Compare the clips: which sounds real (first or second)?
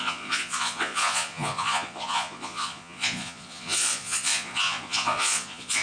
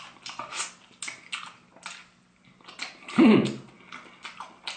second